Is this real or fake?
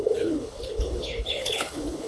fake